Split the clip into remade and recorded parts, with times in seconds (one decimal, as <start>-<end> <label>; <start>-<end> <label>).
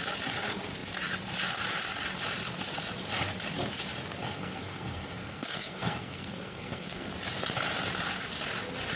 0.0-4.2 recorded; 4.2-7.1 remade; 7.1-9.0 recorded